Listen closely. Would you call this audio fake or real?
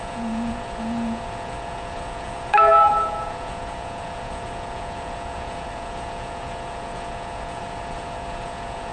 fake